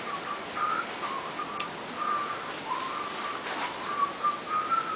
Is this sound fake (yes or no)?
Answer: yes